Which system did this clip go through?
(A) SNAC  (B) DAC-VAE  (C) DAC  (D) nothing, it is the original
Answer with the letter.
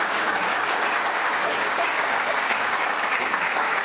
C